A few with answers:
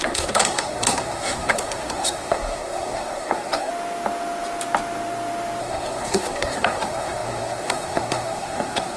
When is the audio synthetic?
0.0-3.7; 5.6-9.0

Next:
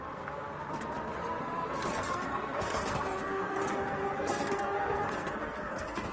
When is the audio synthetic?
0.0-0.5; 1.2-6.1